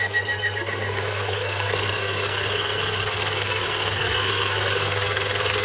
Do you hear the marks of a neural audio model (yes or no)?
yes